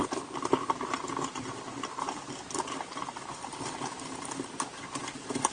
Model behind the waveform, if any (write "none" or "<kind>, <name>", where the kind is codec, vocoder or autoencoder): none